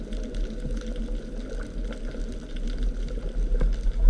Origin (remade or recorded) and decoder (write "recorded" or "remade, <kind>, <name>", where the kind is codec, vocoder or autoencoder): recorded